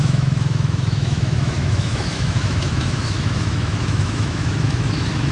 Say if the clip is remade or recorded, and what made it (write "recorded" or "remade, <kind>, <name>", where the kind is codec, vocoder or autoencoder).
remade, autoencoder, DAC-VAE